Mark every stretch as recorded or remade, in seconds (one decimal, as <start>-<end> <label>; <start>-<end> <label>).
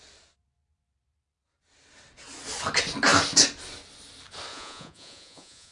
0.0-4.5 recorded; 4.5-5.7 remade